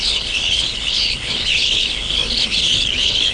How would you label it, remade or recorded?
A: remade